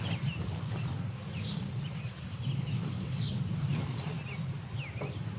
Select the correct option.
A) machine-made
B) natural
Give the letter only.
B